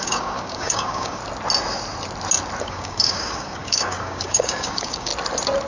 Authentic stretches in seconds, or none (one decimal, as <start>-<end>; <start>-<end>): 1.2-2.6; 5.1-5.7